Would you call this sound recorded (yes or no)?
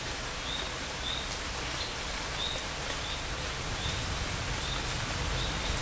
yes